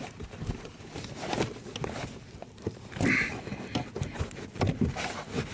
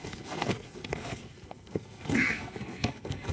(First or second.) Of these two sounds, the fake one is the second